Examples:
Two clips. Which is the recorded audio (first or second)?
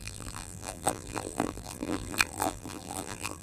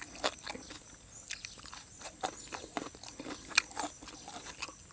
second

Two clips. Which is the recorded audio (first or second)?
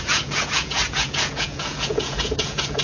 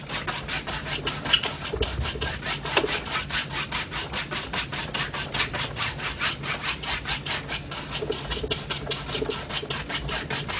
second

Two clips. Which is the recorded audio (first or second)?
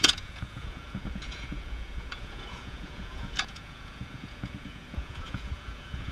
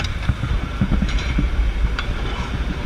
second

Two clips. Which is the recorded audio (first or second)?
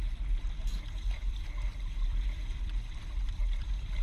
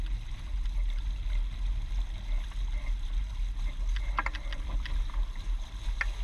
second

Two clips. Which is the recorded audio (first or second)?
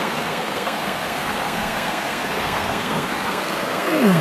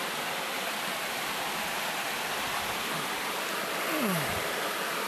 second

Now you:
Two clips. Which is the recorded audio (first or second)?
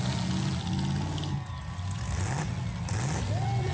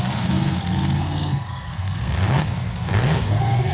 first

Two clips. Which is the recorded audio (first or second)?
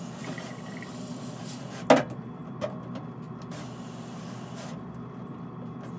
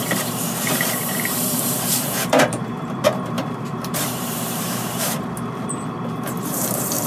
first